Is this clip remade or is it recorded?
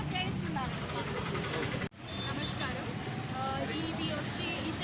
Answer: recorded